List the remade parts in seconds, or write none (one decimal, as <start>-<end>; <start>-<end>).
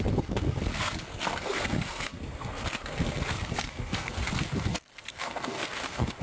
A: 0.0-6.2